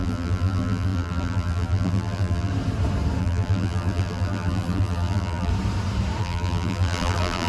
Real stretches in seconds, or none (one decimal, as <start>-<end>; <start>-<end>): 2.5-3.2; 5.5-6.2